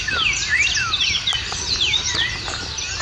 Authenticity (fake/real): real